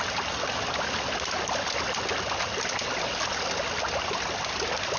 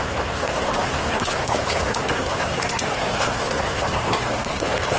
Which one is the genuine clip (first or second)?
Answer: first